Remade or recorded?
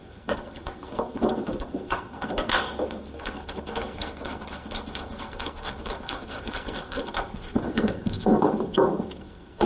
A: remade